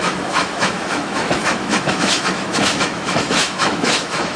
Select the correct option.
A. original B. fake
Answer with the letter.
B